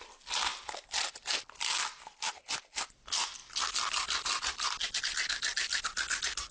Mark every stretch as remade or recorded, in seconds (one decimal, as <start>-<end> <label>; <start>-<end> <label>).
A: 0.0-6.5 recorded